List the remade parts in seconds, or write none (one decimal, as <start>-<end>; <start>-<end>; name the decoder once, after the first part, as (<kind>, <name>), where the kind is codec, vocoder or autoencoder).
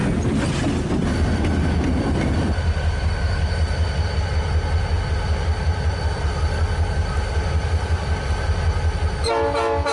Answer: none